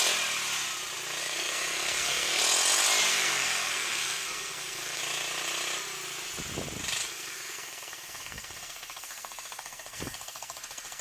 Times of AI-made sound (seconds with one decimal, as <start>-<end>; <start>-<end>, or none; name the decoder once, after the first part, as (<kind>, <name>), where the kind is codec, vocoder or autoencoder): 1.2-2.4 (codec, SNAC); 3.1-5.0; 7.0-11.0